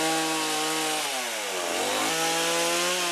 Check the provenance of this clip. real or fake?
real